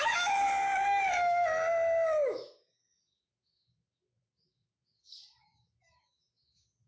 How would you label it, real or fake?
fake